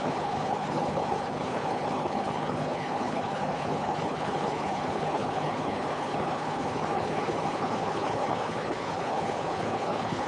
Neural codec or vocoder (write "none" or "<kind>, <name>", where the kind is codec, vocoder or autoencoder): codec, HILCodec